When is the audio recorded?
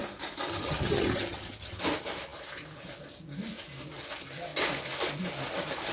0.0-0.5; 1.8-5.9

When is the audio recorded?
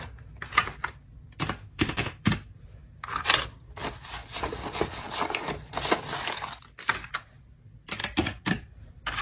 0.0-1.6; 2.3-9.2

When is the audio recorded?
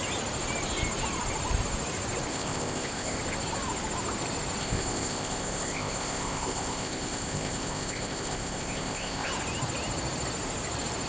0.0-2.3; 3.2-4.6; 9.3-11.1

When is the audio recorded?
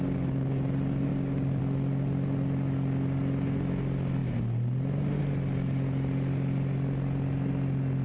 0.0-1.1; 1.6-8.0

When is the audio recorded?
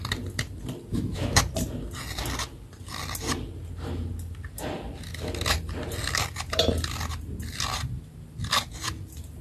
0.0-0.9; 1.4-9.4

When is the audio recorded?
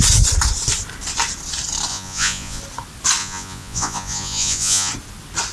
0.0-1.9; 2.6-3.2; 4.9-5.5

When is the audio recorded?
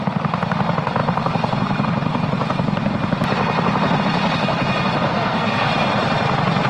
0.0-5.1; 5.7-6.7